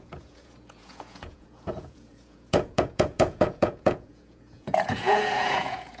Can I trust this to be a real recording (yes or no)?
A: no